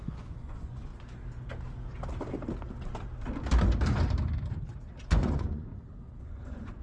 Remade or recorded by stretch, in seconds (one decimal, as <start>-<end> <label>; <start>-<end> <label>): 0.0-0.9 remade; 0.9-5.0 recorded; 5.0-5.7 remade; 5.7-6.2 recorded; 6.2-6.8 remade